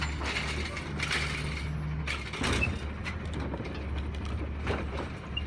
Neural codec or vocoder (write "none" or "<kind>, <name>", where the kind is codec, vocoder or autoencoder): none